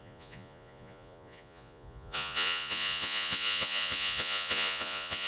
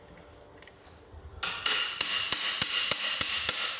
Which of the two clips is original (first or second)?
second